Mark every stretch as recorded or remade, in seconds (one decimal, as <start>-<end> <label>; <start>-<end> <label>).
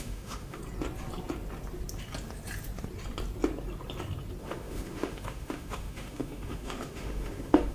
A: 0.0-0.6 remade; 0.6-4.4 recorded; 4.4-7.7 remade